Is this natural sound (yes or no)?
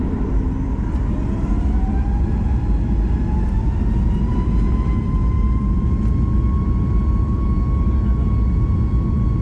no